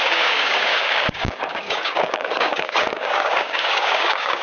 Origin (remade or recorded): remade